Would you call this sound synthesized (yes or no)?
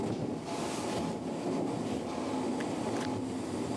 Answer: no